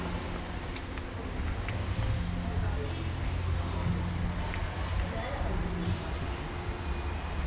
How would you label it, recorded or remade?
recorded